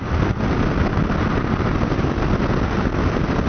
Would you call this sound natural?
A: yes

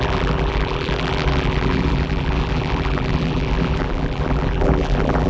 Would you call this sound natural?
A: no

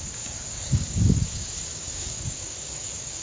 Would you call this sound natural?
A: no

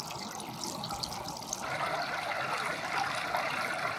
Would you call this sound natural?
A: yes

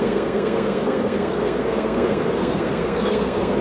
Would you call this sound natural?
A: no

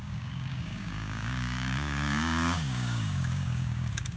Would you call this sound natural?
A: no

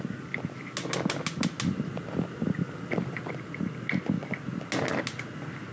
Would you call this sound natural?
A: yes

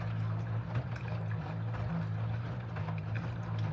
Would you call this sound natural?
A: yes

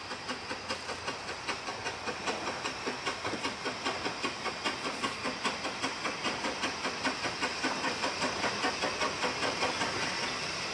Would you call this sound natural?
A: no